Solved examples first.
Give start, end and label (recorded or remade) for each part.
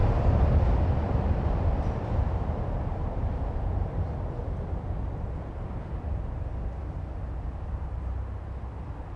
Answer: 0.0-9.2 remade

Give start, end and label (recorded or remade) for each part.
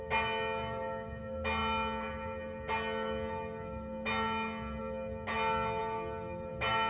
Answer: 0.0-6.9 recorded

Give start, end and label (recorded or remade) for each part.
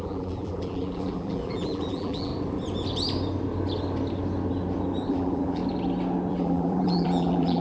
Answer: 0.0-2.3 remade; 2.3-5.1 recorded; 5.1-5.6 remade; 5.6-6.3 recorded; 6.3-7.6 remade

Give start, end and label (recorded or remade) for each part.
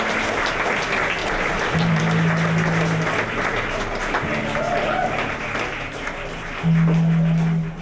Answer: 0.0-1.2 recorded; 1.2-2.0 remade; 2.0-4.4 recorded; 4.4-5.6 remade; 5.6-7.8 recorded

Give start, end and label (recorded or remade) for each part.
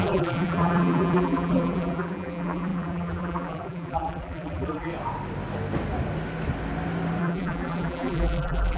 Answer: 0.0-4.9 remade; 4.9-7.2 recorded; 7.2-8.8 remade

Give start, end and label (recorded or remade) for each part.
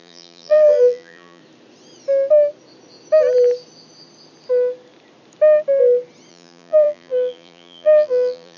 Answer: 0.0-1.4 remade; 1.4-6.3 recorded; 6.3-8.6 remade